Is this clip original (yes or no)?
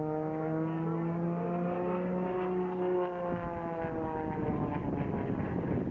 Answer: yes